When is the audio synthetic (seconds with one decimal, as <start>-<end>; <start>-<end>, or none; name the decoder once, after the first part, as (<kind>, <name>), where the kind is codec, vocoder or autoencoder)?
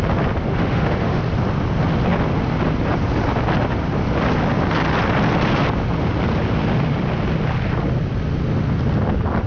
0.5-1.2 (autoencoder, DAC-VAE)